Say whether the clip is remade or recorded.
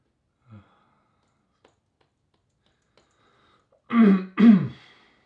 recorded